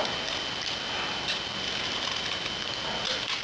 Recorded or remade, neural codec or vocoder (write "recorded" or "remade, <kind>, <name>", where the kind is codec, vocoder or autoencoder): recorded